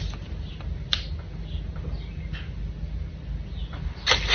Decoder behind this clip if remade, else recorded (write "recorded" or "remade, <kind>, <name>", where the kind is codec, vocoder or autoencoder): recorded